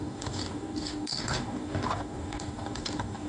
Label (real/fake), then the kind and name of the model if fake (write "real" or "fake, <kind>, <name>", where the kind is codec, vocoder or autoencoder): fake, codec, DAC